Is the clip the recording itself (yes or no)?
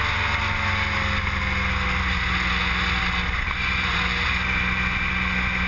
yes